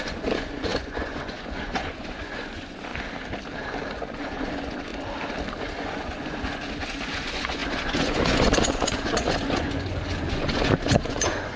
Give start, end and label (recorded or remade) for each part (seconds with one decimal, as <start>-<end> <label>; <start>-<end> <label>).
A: 0.0-2.9 remade; 2.9-3.9 recorded; 3.9-4.9 remade; 4.9-5.5 recorded; 5.5-11.6 remade